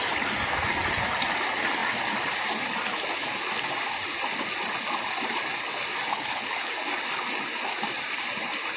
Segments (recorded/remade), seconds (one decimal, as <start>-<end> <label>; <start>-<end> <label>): 0.0-6.1 recorded; 6.1-6.7 remade; 6.7-8.8 recorded

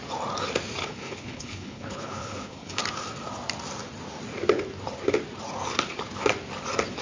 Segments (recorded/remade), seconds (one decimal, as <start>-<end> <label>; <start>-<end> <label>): 0.0-0.8 recorded; 0.8-2.8 remade; 2.8-7.0 recorded

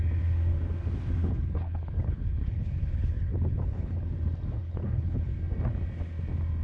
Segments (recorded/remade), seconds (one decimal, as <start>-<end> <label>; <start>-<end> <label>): 0.0-1.2 recorded; 1.2-4.1 remade; 4.1-4.6 recorded; 4.6-5.3 remade; 5.3-6.6 recorded

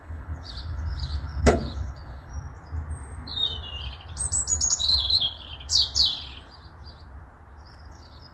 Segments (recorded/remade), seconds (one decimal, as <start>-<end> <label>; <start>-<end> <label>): 0.0-2.3 remade; 2.3-4.7 recorded; 4.7-5.5 remade; 5.5-7.9 recorded; 7.9-8.3 remade